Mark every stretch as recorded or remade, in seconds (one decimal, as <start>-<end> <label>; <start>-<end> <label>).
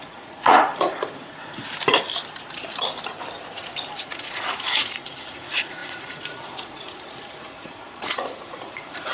0.0-1.6 remade; 1.6-4.0 recorded; 4.0-9.1 remade